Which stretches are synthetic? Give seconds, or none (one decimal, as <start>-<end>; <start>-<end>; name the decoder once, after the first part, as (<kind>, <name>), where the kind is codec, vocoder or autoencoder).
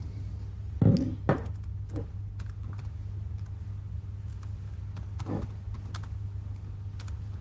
4.3-4.8 (autoencoder, DAC-VAE)